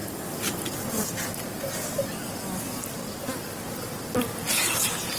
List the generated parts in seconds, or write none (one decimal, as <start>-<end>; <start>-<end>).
none